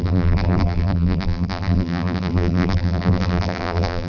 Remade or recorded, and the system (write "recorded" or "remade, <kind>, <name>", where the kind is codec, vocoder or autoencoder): remade, vocoder, BigVGAN v2